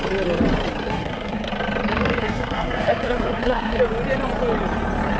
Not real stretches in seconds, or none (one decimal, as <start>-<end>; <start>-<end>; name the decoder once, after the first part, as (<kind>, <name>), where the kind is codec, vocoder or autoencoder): 0.8-1.5 (codec, SNAC); 1.9-3.8